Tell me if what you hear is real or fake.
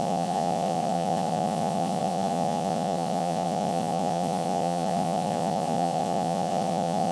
fake